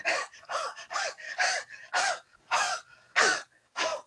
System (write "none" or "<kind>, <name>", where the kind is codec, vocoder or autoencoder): codec, DAC